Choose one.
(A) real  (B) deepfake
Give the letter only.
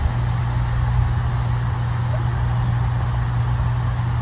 A